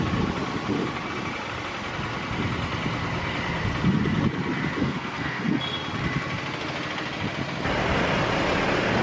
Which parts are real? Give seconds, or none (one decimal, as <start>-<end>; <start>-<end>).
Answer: 0.0-4.8; 5.6-9.0

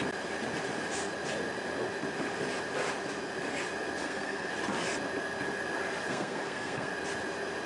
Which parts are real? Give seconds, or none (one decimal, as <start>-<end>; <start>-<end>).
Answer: 0.0-4.0; 4.5-6.1; 6.9-7.7

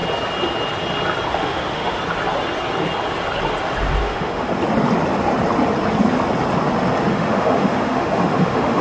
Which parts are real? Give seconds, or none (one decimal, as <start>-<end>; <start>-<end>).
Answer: 0.0-1.3; 2.0-4.0; 4.5-7.1

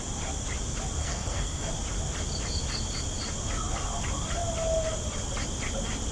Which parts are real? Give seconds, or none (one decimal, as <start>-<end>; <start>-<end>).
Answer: 0.0-1.0; 1.7-6.1

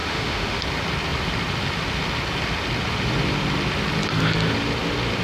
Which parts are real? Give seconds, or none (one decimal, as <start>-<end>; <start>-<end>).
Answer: 0.6-5.2

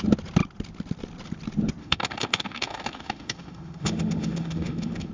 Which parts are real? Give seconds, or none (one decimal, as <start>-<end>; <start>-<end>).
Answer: 0.0-1.8

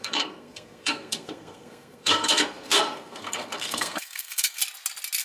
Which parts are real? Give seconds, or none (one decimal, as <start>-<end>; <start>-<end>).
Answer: 4.6-5.2